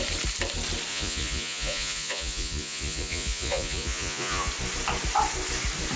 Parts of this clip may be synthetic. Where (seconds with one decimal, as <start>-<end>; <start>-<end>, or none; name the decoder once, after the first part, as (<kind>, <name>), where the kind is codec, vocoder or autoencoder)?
0.9-4.5 (vocoder, Vocos)